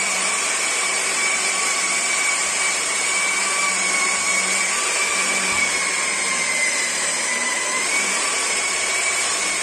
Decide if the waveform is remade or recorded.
remade